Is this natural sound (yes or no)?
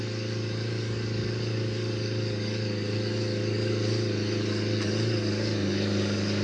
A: no